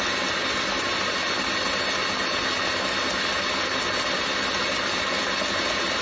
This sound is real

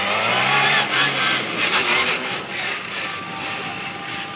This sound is real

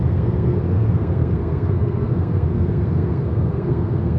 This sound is fake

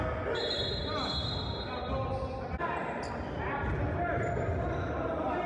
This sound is real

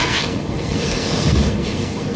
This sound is fake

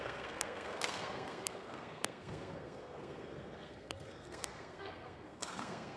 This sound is fake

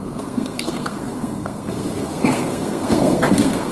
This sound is fake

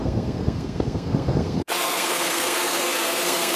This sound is fake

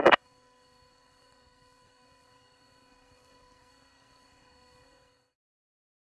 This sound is fake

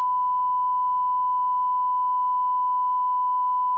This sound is real